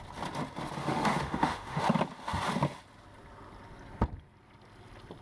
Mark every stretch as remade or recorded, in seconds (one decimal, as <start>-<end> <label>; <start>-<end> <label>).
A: 0.0-0.8 recorded; 0.8-1.8 remade; 1.8-5.2 recorded